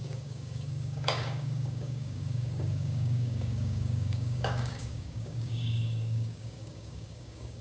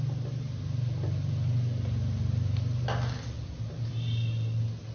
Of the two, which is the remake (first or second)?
first